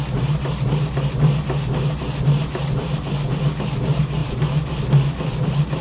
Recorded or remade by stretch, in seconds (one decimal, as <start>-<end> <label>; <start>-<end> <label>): 0.0-4.2 recorded; 4.2-4.8 remade; 4.8-5.8 recorded

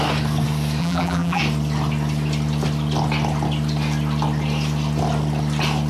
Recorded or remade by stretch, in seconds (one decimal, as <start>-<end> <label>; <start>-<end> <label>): 0.0-0.8 recorded; 0.8-1.4 remade; 1.4-5.9 recorded

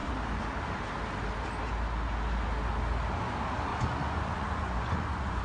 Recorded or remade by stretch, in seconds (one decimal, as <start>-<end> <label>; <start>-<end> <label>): 0.0-3.7 recorded; 3.7-5.4 remade

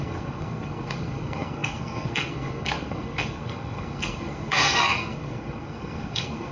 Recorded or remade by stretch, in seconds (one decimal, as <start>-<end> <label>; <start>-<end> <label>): 0.0-6.5 remade